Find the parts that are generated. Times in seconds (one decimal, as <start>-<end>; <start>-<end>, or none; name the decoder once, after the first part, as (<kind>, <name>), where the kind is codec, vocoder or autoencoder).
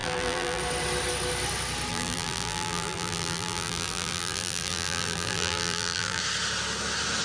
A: 0.0-0.6 (vocoder, BigVGAN v2); 1.9-6.2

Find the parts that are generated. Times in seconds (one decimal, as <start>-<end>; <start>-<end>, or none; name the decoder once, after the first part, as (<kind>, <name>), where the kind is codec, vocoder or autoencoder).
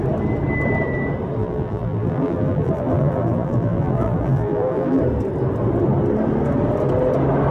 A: 1.4-5.0 (vocoder, BigVGAN v2)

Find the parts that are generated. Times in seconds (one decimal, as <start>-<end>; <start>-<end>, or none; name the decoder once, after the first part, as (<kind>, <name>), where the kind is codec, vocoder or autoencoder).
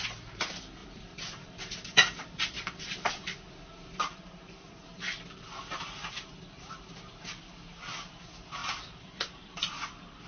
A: 0.8-4.9 (vocoder, BigVGAN v2); 8.6-10.3